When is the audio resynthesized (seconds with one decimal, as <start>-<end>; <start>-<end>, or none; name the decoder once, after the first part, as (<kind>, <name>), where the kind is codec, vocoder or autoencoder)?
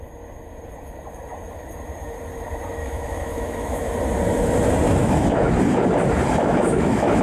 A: 2.8-3.9 (autoencoder, DAC-VAE); 5.0-5.5; 6.4-7.2